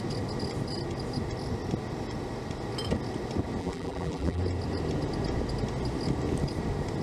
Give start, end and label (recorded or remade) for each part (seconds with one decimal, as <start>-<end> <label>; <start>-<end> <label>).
0.0-3.6 recorded; 3.6-4.4 remade; 4.4-7.0 recorded